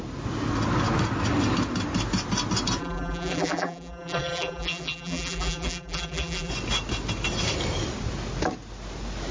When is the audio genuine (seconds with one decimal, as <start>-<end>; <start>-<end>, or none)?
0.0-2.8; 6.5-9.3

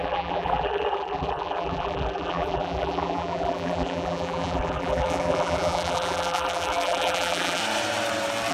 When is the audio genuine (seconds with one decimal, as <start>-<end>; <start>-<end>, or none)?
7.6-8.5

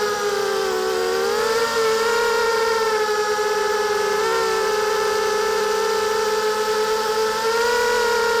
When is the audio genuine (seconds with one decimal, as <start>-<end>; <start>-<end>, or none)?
0.0-2.5; 4.2-8.4